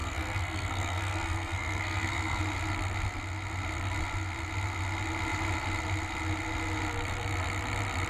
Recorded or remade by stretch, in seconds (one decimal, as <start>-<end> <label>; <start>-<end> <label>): 0.0-2.4 remade; 2.4-8.1 recorded